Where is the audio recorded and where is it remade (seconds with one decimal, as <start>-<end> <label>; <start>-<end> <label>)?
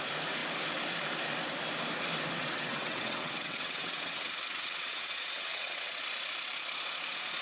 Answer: 0.0-2.4 recorded; 2.4-6.0 remade; 6.0-7.4 recorded